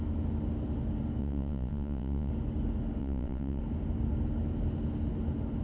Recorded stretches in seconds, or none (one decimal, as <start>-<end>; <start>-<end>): 0.0-1.2; 2.3-3.0; 3.6-5.6